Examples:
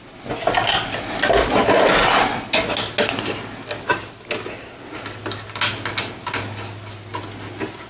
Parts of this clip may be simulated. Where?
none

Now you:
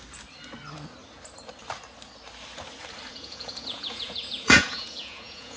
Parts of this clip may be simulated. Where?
3.1-5.6 (vocoder, Vocos)

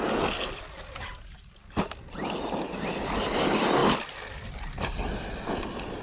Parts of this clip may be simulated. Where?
none

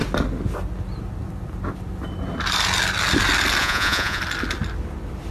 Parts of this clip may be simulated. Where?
3.6-4.2 (vocoder, Vocos)

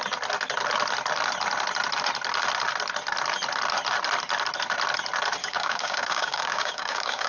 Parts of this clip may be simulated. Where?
5.4-7.3 (codec, DAC)

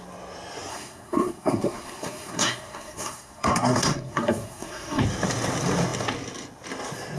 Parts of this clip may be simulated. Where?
0.7-5.0 (codec, SNAC)